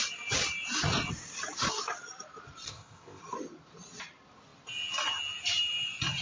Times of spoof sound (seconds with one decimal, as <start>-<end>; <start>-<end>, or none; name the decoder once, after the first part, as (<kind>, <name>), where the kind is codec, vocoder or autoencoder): 2.7-3.2 (codec, ZipCodec)